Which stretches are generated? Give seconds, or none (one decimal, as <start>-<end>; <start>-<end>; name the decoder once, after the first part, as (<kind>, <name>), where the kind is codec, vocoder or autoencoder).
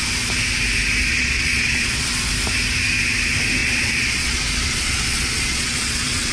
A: 1.1-2.2 (vocoder, Vocos); 3.6-6.3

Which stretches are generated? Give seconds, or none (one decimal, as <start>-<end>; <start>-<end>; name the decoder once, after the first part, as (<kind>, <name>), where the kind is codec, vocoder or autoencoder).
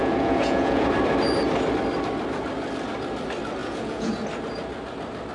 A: 0.0-0.9 (vocoder, Vocos); 3.6-4.1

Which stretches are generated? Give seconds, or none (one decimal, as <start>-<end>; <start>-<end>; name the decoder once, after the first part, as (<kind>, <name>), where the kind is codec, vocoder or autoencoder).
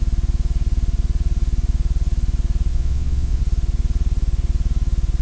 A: 2.7-3.4 (vocoder, Vocos)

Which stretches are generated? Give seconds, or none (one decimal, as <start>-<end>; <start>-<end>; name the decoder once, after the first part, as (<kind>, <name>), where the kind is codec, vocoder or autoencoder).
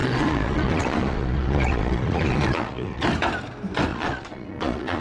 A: 0.0-3.0 (vocoder, Vocos); 3.9-5.0